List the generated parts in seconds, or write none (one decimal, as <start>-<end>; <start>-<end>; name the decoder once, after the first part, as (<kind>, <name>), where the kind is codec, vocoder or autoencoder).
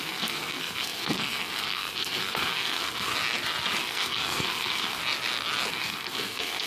0.0-3.1 (codec, SNAC); 3.8-5.0; 5.7-6.7